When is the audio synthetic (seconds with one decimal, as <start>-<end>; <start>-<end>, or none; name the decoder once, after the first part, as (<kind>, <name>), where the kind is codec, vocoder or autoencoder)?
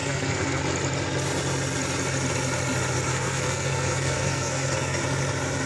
0.0-0.6 (codec, SNAC); 3.1-5.0